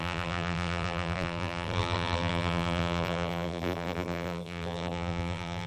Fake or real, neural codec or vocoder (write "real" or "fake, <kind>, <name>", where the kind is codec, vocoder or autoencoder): fake, vocoder, BigVGAN v2